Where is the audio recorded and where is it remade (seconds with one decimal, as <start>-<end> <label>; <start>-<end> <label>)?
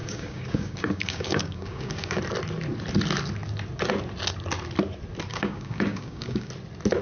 0.0-2.2 remade; 2.2-5.3 recorded; 5.3-6.5 remade; 6.5-7.0 recorded